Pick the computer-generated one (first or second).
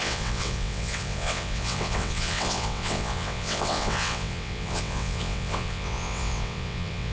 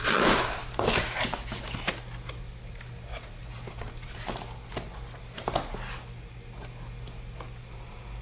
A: first